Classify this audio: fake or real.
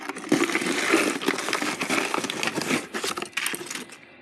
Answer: real